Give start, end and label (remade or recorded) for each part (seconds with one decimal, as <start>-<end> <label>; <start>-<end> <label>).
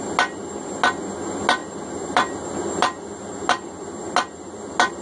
0.0-5.0 recorded